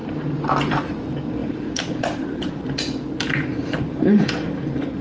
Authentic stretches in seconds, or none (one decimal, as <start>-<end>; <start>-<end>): 0.7-1.4; 2.5-3.5; 4.2-5.0